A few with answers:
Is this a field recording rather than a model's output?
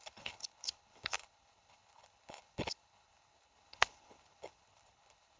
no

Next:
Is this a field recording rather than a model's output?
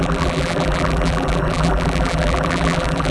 no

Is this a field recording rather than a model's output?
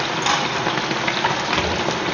yes